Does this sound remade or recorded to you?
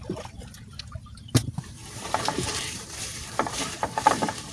remade